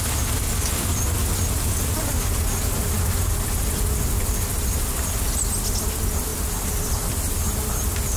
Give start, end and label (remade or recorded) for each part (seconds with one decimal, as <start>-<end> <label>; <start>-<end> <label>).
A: 0.0-6.3 recorded; 6.3-7.4 remade; 7.4-8.2 recorded

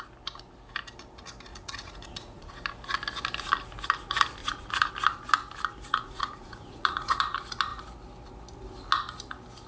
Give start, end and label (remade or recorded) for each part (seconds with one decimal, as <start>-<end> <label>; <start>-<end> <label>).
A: 0.0-1.5 recorded; 1.5-2.5 remade; 2.5-4.4 recorded; 4.4-4.9 remade; 4.9-5.9 recorded; 5.9-7.2 remade; 7.2-9.7 recorded

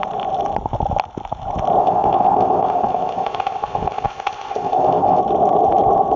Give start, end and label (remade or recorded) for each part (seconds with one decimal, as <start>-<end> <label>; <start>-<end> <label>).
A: 0.0-1.8 recorded; 1.8-5.2 remade; 5.2-6.2 recorded

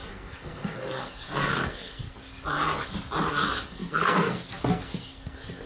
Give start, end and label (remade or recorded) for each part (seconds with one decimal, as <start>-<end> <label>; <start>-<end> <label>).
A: 0.0-2.2 remade; 2.2-3.3 recorded; 3.3-5.7 remade

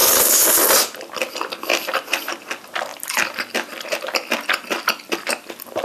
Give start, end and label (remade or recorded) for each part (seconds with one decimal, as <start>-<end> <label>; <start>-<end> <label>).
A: 0.0-0.7 remade; 0.7-1.7 recorded; 1.7-2.3 remade; 2.3-2.9 recorded; 2.9-5.8 remade

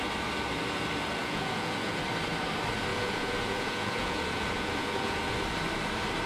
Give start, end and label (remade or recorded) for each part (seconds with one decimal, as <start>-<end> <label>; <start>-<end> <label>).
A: 0.0-1.2 recorded; 1.2-2.0 remade; 2.0-2.9 recorded; 2.9-5.2 remade; 5.2-6.3 recorded